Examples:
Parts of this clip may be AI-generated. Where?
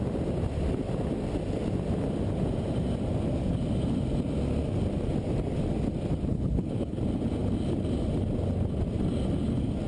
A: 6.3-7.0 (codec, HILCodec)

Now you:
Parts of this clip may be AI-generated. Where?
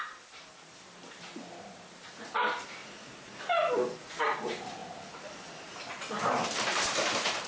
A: 2.8-3.4 (vocoder, Vocos)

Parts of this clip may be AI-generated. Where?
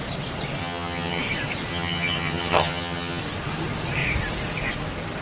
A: 0.6-1.2 (vocoder, HiFi-GAN); 1.7-3.2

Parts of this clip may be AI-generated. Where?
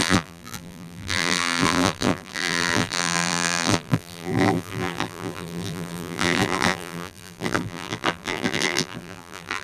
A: 0.0-9.6 (vocoder, BigVGAN v2)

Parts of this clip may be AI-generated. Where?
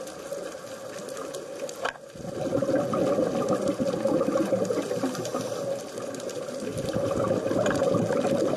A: none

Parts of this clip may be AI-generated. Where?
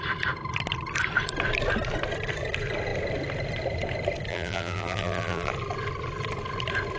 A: 4.3-5.5 (vocoder, BigVGAN v2)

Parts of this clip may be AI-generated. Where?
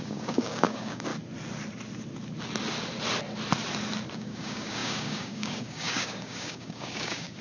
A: 0.0-1.1 (codec, DAC); 4.1-7.4